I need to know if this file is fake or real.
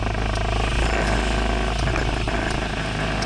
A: real